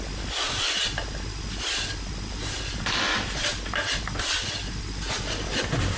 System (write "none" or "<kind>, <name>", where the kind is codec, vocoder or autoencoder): none